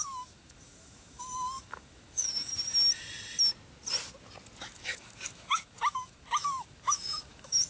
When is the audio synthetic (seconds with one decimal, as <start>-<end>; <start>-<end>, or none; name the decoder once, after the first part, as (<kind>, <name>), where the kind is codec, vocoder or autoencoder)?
0.0-2.5 (autoencoder, DAC-VAE); 4.6-7.7